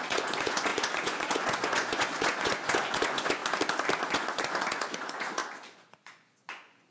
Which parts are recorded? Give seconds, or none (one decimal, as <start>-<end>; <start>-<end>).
3.4-4.0